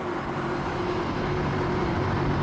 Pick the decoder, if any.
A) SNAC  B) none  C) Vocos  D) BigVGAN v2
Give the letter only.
D